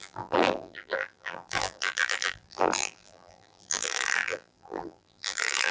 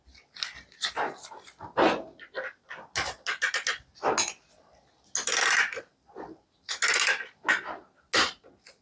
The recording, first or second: second